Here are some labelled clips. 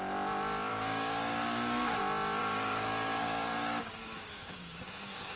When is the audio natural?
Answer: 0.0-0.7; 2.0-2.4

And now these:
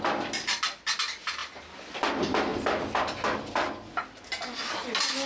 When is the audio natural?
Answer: 0.0-5.3

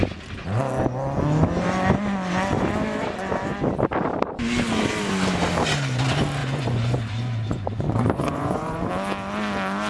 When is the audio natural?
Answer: 0.0-6.4; 8.9-9.9

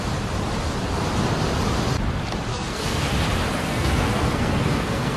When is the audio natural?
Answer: 0.0-2.5; 3.1-3.6

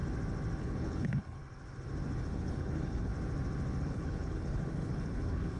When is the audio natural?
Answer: 0.0-0.6; 1.4-2.2; 3.1-3.8

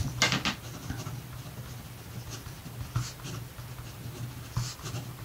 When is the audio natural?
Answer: 0.0-5.2

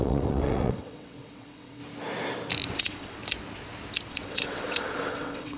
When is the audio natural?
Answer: 1.8-2.8; 3.2-4.1